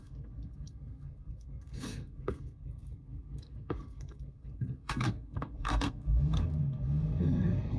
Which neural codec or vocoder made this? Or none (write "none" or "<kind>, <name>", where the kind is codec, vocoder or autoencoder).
codec, SNAC